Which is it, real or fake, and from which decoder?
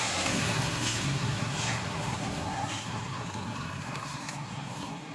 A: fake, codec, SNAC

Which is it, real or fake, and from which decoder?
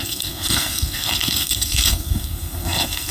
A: fake, codec, SNAC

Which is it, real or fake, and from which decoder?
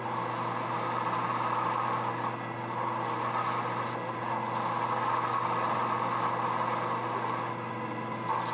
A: real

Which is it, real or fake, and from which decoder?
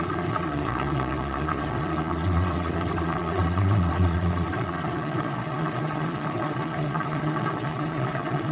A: fake, vocoder, Vocos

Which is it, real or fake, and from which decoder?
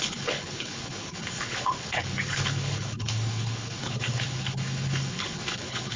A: fake, codec, HILCodec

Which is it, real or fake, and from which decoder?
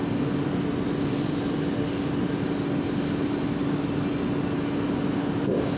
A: real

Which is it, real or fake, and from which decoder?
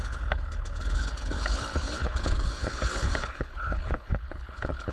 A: fake, codec, HILCodec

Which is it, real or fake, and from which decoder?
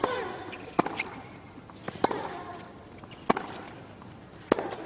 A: real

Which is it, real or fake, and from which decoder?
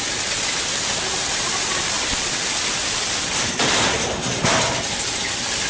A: fake, vocoder, BigVGAN v2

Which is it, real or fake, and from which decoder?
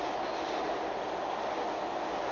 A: real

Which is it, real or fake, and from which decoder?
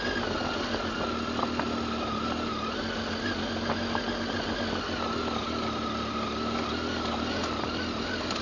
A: real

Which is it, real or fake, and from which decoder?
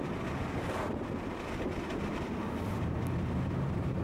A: real